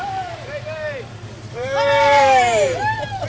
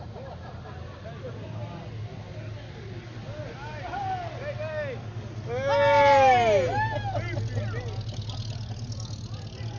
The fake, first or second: first